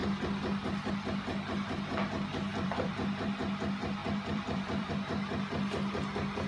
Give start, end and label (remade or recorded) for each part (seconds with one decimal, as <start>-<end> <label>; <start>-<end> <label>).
0.0-2.5 recorded; 2.5-3.3 remade; 3.3-4.0 recorded; 4.0-4.9 remade; 4.9-6.5 recorded